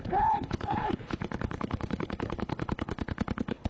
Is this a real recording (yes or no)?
no